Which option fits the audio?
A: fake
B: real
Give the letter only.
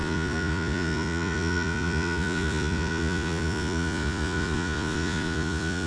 A